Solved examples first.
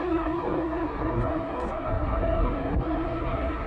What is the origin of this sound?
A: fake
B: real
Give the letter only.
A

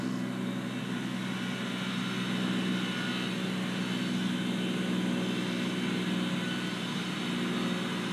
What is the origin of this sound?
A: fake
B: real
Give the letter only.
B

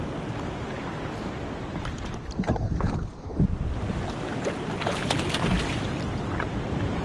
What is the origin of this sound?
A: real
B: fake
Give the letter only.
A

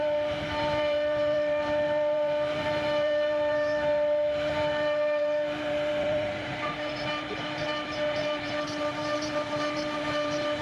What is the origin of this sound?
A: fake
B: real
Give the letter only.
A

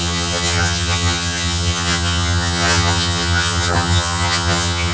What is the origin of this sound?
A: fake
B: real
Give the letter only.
A